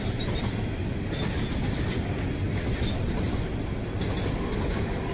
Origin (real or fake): real